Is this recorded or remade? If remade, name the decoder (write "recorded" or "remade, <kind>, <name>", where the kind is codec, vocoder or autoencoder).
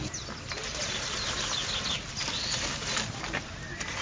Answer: recorded